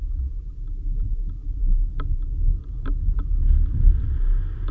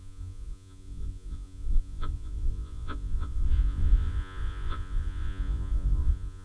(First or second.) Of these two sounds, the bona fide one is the first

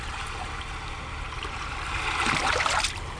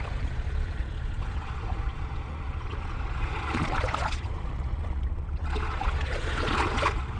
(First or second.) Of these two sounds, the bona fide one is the first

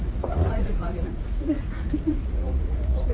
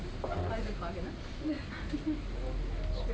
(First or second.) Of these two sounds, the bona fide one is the second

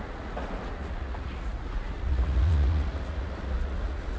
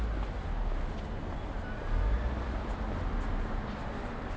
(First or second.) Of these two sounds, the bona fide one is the second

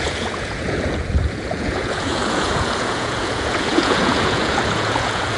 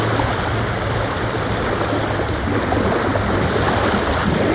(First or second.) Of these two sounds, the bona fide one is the second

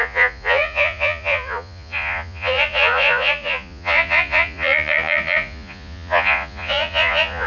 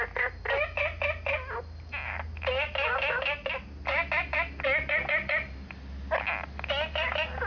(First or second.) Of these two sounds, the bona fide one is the second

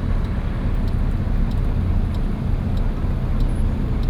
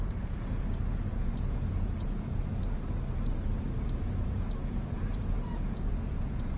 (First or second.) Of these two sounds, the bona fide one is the first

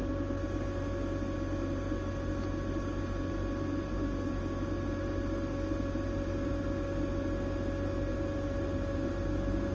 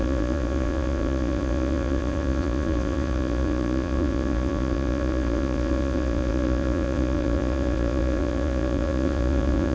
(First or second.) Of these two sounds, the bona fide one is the first